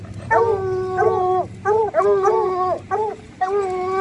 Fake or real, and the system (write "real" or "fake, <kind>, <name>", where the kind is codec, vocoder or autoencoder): real